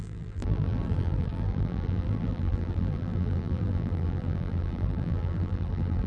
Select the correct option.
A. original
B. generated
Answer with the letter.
B